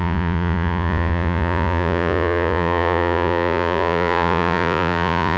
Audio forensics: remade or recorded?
remade